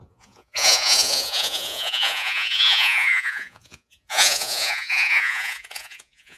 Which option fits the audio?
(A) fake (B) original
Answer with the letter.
A